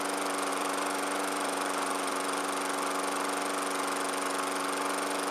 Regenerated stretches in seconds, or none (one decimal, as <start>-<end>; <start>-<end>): 0.5-2.4